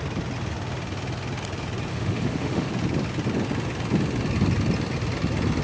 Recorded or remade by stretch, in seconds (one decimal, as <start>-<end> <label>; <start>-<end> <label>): 0.0-1.9 recorded; 1.9-2.7 remade; 2.7-5.6 recorded